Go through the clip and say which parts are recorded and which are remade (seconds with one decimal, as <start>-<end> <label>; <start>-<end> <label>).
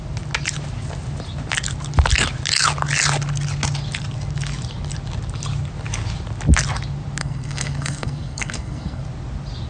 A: 0.0-7.2 recorded; 7.2-9.0 remade; 9.0-9.7 recorded